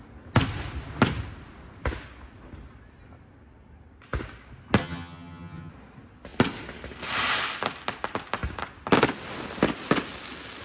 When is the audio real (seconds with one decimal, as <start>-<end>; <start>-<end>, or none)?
0.0-4.8; 5.7-10.6